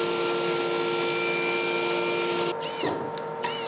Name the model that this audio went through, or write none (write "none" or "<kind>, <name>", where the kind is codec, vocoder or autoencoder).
none